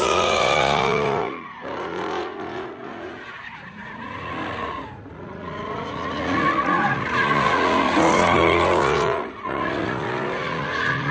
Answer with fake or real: fake